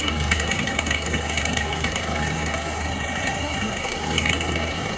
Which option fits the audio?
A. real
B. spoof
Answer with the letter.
B